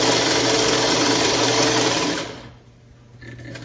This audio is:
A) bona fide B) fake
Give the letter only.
A